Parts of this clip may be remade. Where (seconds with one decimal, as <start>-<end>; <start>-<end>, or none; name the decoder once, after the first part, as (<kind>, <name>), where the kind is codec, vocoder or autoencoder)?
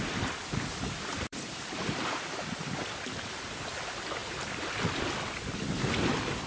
0.7-3.2 (vocoder, BigVGAN v2); 4.2-4.8